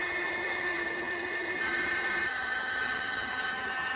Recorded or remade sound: remade